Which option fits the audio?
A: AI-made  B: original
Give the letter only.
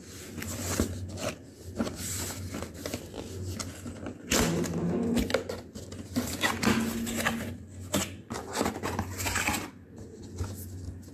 B